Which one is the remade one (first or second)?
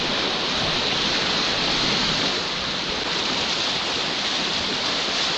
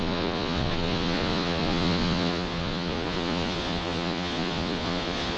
second